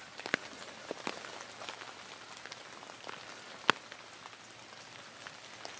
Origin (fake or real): real